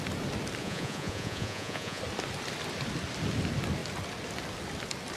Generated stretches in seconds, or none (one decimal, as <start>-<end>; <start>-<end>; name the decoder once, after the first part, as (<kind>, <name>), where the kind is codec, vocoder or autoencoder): 0.6-2.0 (vocoder, Vocos)